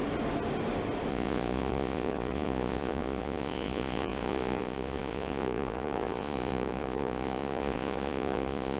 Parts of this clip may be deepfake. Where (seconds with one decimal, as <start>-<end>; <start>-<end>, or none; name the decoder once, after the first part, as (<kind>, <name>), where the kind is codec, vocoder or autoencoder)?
1.1-8.8 (vocoder, Vocos)